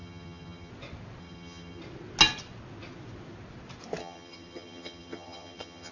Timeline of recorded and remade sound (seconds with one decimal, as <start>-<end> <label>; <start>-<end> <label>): 0.0-0.7 remade; 0.7-1.2 recorded; 1.2-1.8 remade; 1.8-4.0 recorded; 4.0-5.9 remade